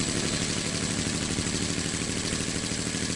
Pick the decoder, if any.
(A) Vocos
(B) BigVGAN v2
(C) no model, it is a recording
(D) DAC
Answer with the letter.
C